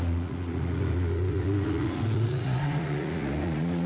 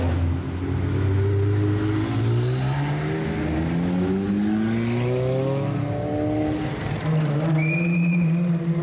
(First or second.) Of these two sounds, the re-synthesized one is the first